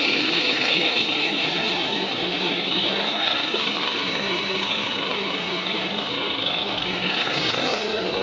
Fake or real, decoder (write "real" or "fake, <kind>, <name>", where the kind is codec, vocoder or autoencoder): fake, codec, SNAC